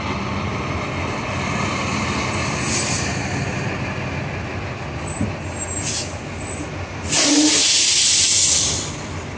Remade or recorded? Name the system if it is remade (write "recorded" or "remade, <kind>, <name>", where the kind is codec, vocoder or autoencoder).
recorded